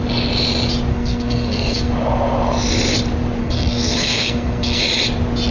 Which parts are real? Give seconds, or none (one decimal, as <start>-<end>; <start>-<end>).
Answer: 0.0-0.9; 1.9-3.4; 4.8-5.5